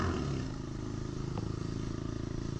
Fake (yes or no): no